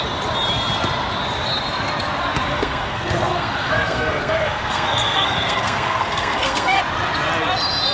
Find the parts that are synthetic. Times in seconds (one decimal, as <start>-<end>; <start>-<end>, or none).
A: 2.5-6.8